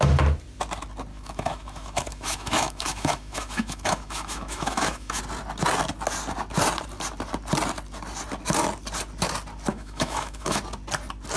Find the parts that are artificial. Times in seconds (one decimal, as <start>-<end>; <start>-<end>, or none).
1.1-5.2; 9.7-10.6